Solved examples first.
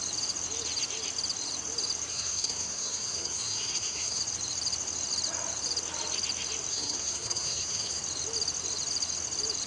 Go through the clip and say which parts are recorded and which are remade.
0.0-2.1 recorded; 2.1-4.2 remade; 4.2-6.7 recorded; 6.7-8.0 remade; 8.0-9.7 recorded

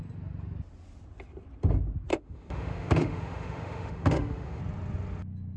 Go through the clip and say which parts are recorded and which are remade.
0.0-2.1 recorded; 2.1-4.6 remade; 4.6-5.6 recorded